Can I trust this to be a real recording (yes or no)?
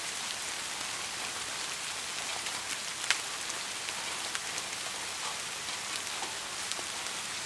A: yes